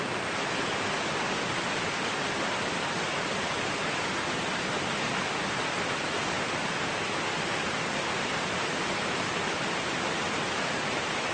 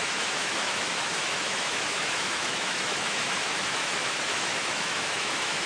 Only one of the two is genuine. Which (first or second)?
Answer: first